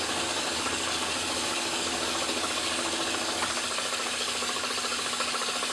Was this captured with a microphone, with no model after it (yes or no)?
no